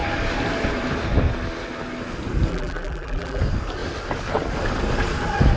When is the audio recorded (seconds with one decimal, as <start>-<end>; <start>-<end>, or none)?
0.0-2.5; 3.4-5.6